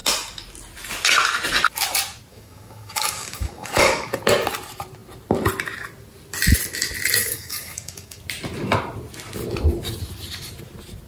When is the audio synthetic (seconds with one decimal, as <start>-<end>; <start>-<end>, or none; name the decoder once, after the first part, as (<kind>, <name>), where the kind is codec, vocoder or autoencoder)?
2.3-4.2 (codec, DAC); 7.2-8.2